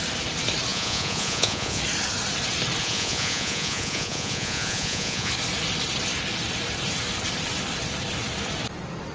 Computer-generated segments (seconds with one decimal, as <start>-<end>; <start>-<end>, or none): 0.7-1.8; 2.8-5.3

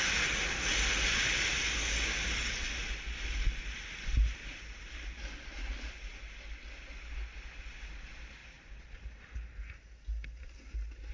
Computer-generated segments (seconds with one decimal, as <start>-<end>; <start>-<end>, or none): none

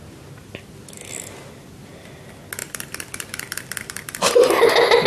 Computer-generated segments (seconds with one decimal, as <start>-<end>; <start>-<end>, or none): 2.6-4.3

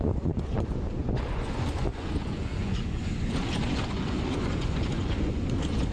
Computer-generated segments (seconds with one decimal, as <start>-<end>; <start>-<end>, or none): 0.0-5.9

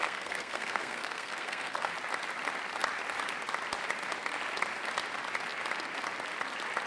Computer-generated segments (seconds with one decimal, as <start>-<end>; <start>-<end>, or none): 0.0-1.9

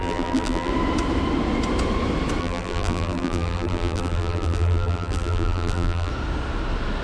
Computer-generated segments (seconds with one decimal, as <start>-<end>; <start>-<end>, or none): 0.0-0.7; 2.4-6.1

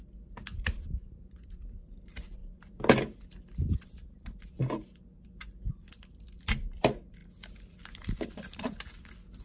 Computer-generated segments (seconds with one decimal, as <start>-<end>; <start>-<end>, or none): 0.0-2.4; 4.5-9.4